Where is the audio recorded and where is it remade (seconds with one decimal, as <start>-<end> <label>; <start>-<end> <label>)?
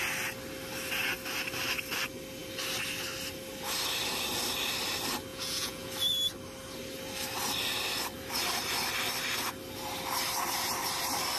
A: 0.0-5.3 recorded; 5.3-5.9 remade; 5.9-11.4 recorded